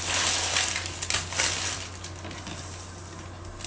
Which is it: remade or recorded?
recorded